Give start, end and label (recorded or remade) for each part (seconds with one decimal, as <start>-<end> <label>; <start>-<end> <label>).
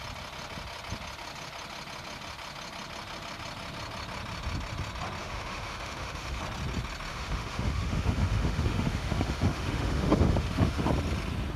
0.0-5.2 recorded; 5.2-6.4 remade; 6.4-7.1 recorded; 7.1-10.9 remade; 10.9-11.6 recorded